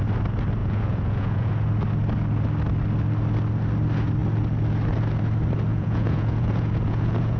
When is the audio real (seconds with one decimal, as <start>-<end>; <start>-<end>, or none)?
0.0-0.6; 1.5-5.7